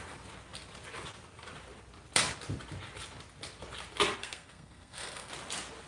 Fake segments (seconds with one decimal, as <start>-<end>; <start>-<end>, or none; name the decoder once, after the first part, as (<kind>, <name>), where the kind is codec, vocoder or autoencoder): 4.2-5.3 (codec, SNAC)